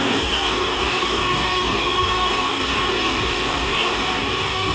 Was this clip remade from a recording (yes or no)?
yes